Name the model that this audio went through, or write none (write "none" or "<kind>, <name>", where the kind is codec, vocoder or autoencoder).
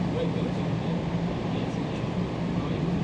none